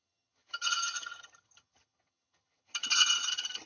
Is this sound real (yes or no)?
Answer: no